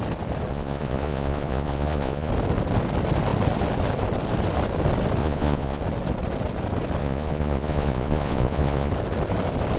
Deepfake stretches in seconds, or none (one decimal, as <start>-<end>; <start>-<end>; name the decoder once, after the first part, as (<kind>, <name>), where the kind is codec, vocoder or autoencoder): 0.5-2.3 (vocoder, Vocos); 5.2-5.8; 7.0-8.9